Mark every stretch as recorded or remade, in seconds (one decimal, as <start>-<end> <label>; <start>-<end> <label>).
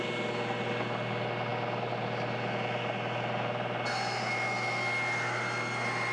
0.0-6.1 recorded